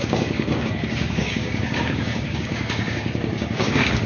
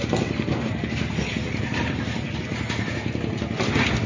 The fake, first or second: first